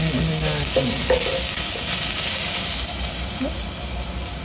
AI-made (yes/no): no